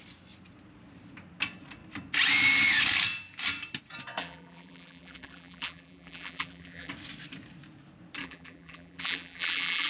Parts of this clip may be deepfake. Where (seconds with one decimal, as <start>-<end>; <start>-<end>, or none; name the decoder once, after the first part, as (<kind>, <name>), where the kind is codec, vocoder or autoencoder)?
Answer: 4.2-6.9 (vocoder, BigVGAN v2); 8.2-9.9